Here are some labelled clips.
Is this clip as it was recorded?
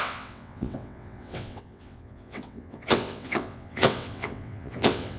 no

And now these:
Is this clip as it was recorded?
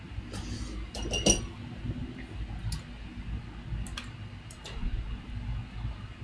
yes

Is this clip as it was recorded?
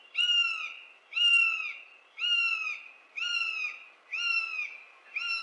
yes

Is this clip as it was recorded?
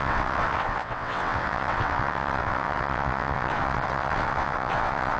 no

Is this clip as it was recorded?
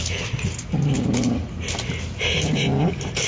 yes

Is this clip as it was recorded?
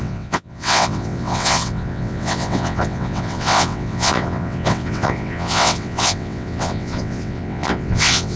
no